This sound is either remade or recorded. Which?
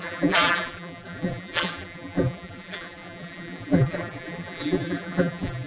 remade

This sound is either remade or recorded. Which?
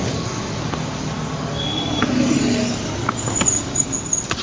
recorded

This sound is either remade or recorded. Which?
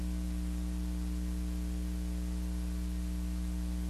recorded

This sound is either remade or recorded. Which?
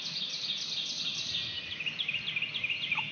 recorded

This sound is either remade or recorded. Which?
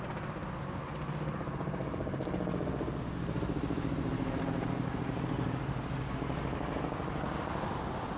recorded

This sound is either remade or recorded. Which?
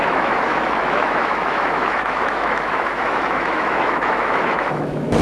remade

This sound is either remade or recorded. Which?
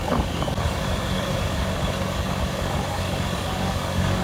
remade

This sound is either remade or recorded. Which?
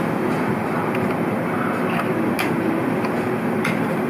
recorded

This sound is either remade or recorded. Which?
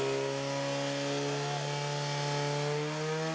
recorded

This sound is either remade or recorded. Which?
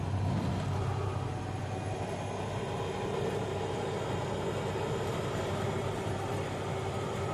recorded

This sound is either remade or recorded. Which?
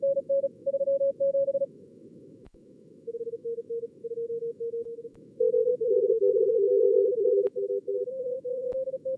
remade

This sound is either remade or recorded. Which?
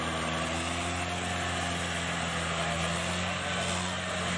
recorded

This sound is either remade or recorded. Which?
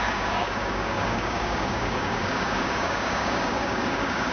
remade